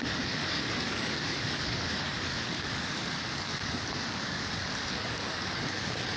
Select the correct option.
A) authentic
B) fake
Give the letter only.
B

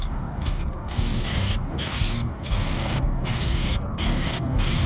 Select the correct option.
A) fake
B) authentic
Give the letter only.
A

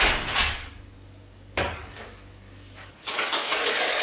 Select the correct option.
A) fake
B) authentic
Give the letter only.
A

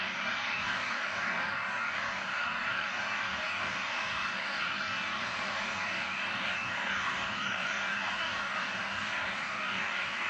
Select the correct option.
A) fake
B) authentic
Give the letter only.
A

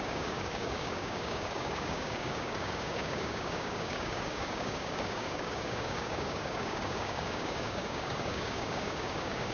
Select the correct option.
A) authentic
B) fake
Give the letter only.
B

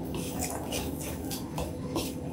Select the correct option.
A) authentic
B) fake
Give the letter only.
B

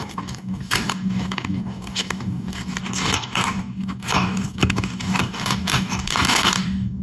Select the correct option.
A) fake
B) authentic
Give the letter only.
A